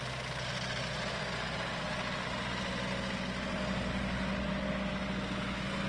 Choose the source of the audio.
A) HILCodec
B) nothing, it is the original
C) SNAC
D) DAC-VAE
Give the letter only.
B